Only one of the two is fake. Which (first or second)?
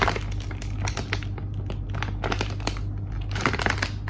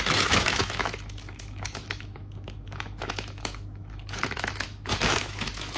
second